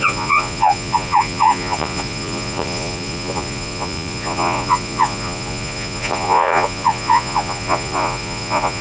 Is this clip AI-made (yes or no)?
yes